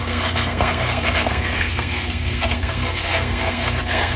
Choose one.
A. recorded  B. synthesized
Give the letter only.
B